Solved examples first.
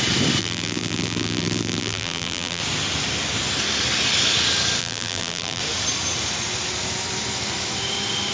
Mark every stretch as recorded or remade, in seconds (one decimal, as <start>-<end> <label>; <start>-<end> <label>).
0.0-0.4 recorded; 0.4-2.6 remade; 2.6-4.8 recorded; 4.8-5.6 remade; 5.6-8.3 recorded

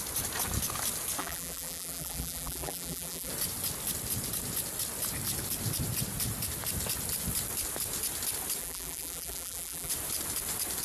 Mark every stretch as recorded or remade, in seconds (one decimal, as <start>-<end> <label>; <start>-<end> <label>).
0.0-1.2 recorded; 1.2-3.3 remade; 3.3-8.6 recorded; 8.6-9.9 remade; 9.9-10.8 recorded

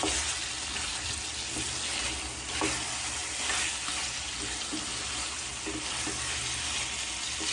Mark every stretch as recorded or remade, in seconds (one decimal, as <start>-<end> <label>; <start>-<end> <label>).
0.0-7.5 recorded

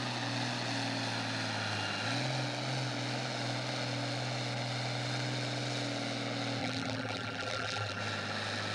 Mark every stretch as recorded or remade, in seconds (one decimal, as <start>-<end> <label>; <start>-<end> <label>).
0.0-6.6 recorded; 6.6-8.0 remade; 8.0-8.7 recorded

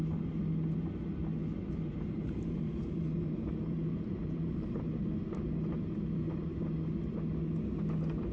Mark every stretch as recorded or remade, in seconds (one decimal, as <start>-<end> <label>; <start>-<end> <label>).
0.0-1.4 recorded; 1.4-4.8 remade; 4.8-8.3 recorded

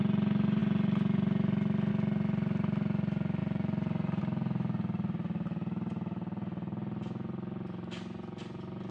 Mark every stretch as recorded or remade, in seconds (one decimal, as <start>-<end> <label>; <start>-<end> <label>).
0.0-3.4 recorded; 3.4-4.2 remade; 4.2-8.9 recorded

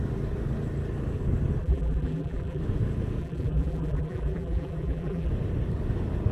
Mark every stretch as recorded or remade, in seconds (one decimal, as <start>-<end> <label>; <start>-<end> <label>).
0.0-1.6 recorded; 1.6-2.6 remade; 2.6-3.2 recorded; 3.2-5.3 remade; 5.3-6.3 recorded